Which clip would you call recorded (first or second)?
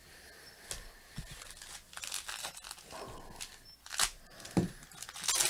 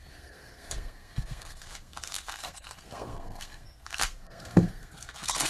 first